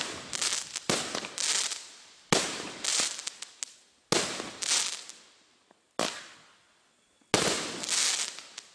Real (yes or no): yes